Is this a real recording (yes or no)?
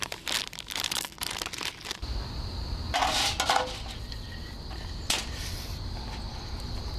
yes